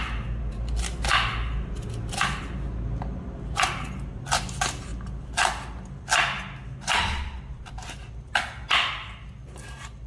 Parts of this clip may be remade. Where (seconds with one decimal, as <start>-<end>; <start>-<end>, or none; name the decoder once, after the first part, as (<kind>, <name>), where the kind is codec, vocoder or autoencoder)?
none